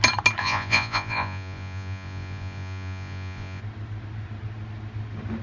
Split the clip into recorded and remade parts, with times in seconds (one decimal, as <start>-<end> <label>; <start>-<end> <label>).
0.0-0.4 recorded; 0.4-3.6 remade; 3.6-5.4 recorded